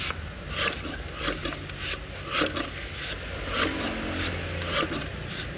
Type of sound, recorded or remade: recorded